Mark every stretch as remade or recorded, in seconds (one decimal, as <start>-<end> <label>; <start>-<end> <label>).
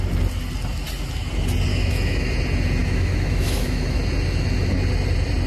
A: 0.0-1.7 recorded; 1.7-2.3 remade; 2.3-2.8 recorded; 2.8-4.0 remade; 4.0-5.5 recorded